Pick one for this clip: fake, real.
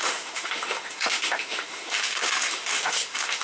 fake